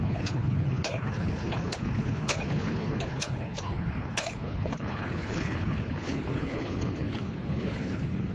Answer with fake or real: fake